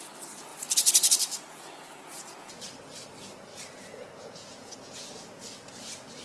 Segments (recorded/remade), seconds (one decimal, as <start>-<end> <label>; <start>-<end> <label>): 0.0-0.5 recorded; 0.5-2.6 remade; 2.6-3.5 recorded; 3.5-5.7 remade; 5.7-6.2 recorded